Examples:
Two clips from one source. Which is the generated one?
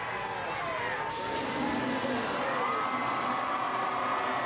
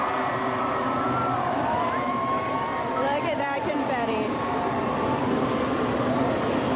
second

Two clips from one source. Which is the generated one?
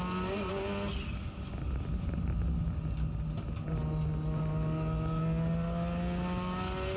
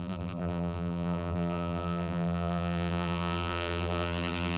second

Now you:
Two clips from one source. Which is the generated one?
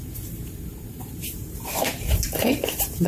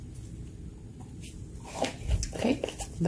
first